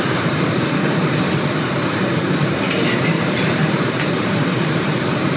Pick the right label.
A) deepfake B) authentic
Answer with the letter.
A